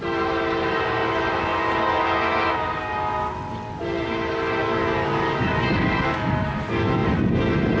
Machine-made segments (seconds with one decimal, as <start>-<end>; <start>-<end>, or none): 4.6-6.5